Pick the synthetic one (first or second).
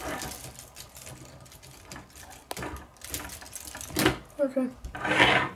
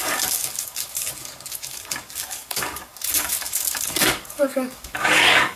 second